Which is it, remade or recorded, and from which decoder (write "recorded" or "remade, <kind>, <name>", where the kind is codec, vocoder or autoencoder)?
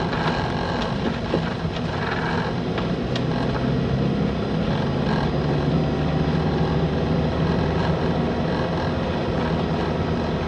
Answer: recorded